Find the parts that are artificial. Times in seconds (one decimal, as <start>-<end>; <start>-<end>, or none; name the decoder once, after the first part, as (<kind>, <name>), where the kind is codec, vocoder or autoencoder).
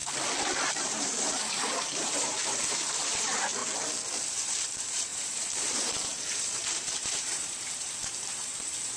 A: 0.7-3.6 (vocoder, BigVGAN v2); 4.3-9.0